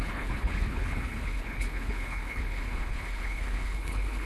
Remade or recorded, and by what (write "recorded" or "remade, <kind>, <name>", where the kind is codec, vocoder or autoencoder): remade, codec, HILCodec